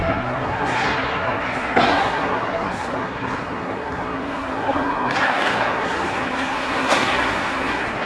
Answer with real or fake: fake